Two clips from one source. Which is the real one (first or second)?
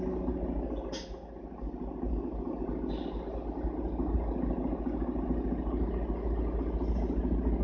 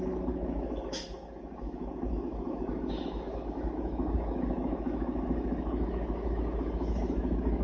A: first